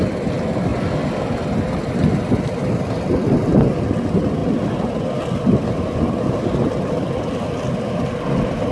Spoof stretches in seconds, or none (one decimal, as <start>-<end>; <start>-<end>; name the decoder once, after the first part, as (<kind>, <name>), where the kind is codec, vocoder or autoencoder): none